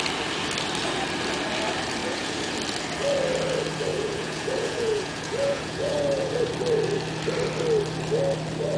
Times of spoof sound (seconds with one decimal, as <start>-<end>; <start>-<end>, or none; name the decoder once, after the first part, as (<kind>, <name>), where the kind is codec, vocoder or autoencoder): 2.0-2.5 (vocoder, Vocos); 3.9-6.3